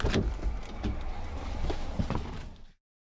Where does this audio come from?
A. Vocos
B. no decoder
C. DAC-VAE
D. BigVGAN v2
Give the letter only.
B